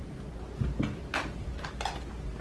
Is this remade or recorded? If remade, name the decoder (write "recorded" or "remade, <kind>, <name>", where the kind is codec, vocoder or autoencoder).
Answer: recorded